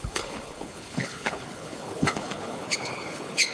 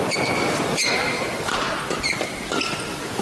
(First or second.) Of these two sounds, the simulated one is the first